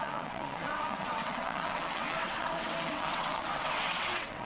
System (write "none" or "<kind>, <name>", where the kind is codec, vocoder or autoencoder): vocoder, WaveNeXt